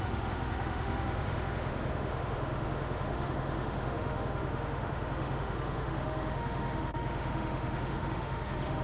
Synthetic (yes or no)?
yes